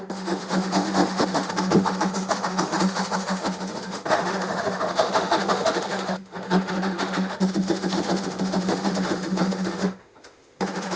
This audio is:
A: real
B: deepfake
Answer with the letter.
B